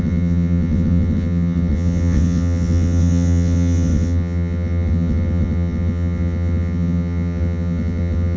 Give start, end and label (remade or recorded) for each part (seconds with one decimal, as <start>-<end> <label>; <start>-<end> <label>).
0.0-8.4 remade